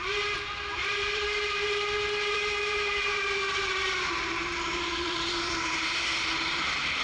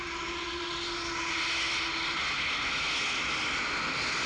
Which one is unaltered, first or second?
second